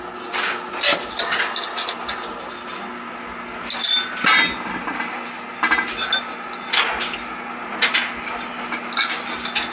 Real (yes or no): yes